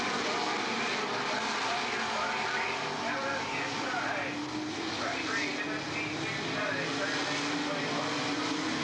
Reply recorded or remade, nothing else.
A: recorded